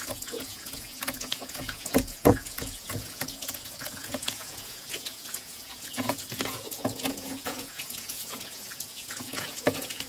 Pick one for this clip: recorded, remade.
remade